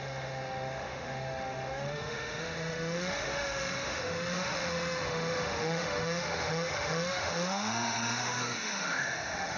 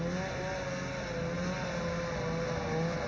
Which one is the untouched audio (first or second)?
second